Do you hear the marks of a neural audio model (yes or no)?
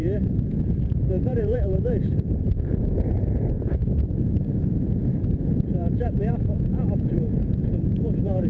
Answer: yes